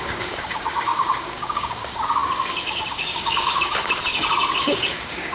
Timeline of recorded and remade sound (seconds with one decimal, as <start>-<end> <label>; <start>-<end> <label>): 0.0-4.0 remade; 4.0-4.6 recorded; 4.6-5.3 remade

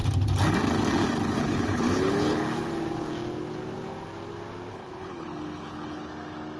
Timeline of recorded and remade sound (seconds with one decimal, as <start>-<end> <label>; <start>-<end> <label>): 0.0-1.4 recorded; 1.4-2.4 remade; 2.4-4.7 recorded; 4.7-6.1 remade; 6.1-6.6 recorded